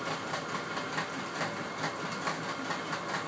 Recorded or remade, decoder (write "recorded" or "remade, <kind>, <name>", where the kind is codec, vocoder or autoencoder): recorded